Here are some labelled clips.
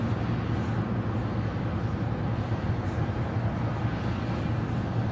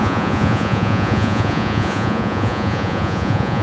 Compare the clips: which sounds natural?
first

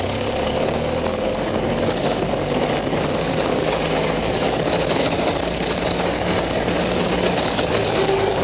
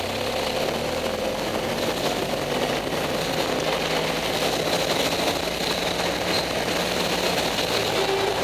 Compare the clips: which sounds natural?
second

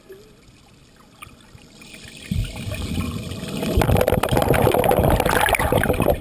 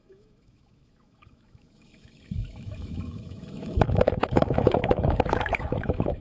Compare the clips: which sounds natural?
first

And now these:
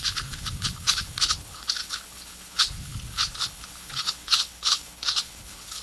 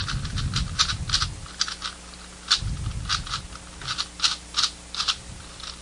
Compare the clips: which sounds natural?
second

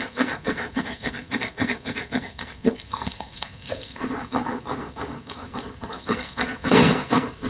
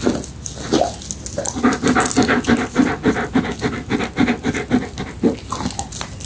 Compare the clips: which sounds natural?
second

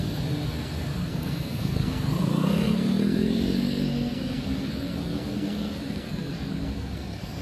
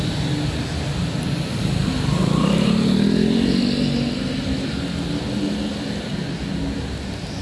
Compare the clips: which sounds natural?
second